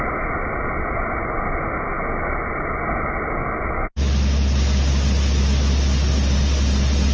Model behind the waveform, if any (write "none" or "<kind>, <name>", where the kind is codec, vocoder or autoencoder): none